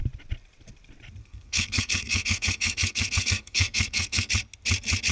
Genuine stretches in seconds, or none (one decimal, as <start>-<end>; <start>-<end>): 0.0-1.2; 4.3-5.1

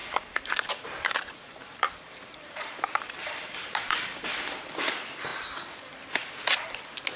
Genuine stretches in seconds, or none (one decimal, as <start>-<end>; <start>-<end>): 4.3-7.2

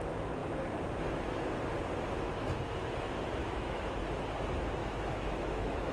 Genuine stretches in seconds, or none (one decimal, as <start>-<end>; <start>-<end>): 0.0-3.4; 4.0-4.8